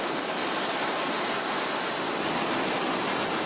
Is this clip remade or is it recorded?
recorded